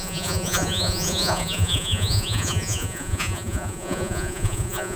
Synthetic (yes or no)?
yes